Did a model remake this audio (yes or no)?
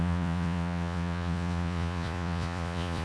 yes